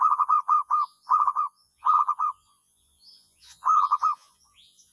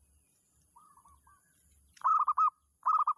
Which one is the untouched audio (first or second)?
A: second